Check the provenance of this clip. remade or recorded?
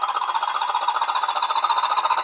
recorded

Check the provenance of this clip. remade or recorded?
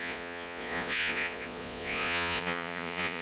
remade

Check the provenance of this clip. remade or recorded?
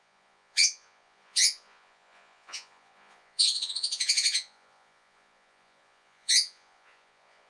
remade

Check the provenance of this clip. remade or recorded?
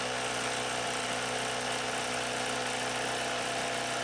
recorded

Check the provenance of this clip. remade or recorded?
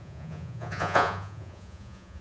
remade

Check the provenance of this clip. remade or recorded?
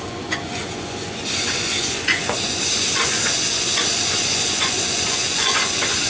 remade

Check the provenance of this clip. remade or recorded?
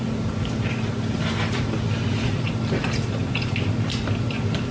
recorded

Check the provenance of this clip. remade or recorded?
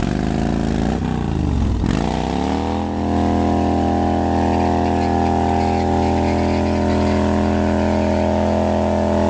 recorded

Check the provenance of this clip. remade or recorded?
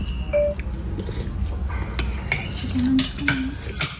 recorded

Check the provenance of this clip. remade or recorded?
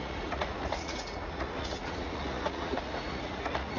remade